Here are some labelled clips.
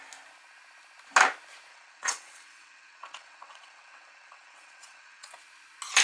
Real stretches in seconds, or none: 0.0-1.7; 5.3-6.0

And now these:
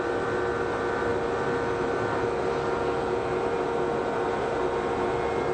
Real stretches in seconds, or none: 0.0-5.5

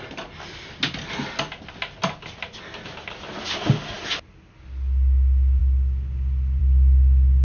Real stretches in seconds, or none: 0.0-7.4

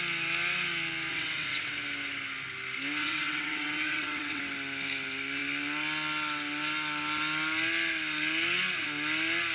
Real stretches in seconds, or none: 0.0-1.1; 1.7-3.0; 4.4-9.5

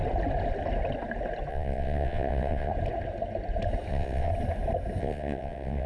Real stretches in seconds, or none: 0.0-1.5; 2.7-3.9; 4.3-5.0

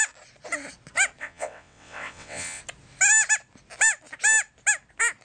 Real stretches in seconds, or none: 0.0-1.2; 2.6-5.2

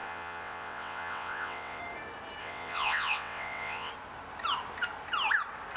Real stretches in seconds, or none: 1.8-2.4; 3.9-5.8

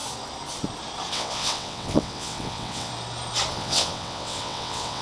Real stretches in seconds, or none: 0.0-1.1; 2.9-3.5